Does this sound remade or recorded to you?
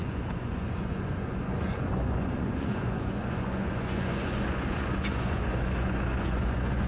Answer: remade